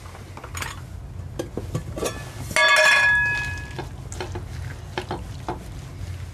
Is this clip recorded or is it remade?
recorded